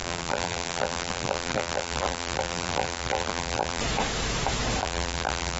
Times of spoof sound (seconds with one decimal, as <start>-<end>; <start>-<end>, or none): 0.0-3.8; 4.8-5.6